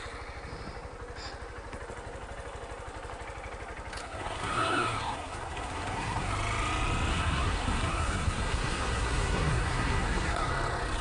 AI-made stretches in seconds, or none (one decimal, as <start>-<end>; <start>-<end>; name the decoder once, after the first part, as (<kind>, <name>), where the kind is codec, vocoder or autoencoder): 4.0-6.3 (codec, SNAC); 7.1-10.5